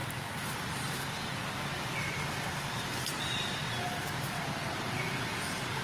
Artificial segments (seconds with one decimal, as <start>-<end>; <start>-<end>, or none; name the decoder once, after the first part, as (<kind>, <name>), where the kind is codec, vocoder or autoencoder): 0.0-5.8 (vocoder, BigVGAN v2)